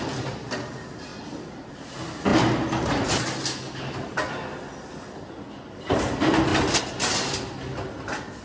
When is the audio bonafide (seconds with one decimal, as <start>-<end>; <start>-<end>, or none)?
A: 0.0-8.4